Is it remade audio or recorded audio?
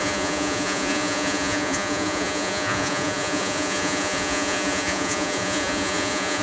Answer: remade